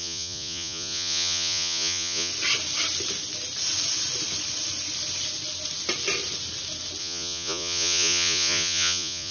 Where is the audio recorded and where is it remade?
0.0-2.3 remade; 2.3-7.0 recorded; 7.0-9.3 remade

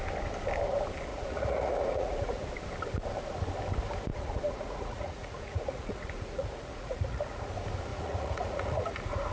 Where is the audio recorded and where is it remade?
0.0-1.1 recorded; 1.1-2.5 remade; 2.5-4.1 recorded; 4.1-7.5 remade; 7.5-7.9 recorded; 7.9-9.3 remade

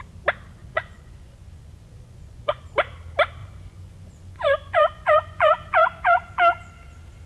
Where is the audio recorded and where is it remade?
0.0-0.6 recorded; 0.6-2.6 remade; 2.6-3.4 recorded; 3.4-6.7 remade; 6.7-7.3 recorded

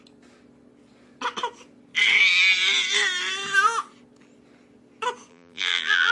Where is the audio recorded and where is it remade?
0.0-5.3 recorded; 5.3-6.1 remade